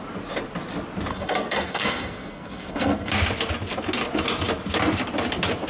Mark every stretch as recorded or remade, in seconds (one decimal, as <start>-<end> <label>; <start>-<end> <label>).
0.0-1.1 recorded; 1.1-3.1 remade; 3.1-5.7 recorded